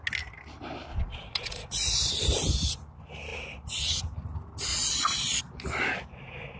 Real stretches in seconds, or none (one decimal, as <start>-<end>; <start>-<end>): 0.0-0.9; 2.1-4.7; 5.4-6.6